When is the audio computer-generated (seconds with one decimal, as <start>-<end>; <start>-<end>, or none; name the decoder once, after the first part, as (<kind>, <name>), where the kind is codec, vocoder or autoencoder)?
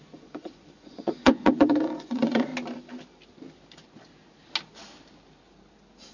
0.0-2.5 (vocoder, Vocos)